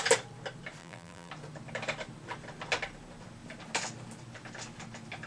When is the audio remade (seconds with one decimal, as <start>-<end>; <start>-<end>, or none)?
0.8-1.3